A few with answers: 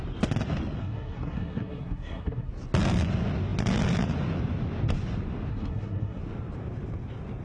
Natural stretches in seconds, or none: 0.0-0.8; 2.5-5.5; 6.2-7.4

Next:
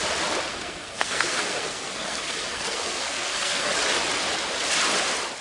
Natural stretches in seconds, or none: 0.0-0.5; 3.7-5.4

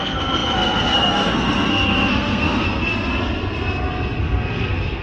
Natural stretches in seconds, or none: 2.9-4.2

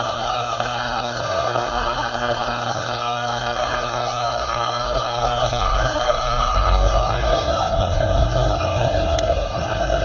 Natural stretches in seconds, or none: none

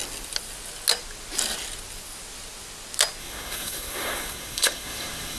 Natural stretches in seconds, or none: 0.0-3.2

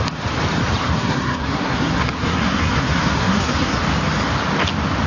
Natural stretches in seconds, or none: 0.0-0.8; 3.8-5.1

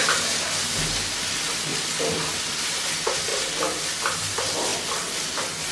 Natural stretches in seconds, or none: 0.0-5.7